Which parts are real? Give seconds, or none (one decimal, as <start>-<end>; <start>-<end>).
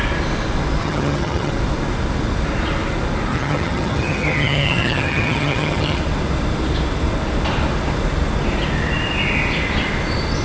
0.0-0.8; 1.5-3.3; 6.0-10.4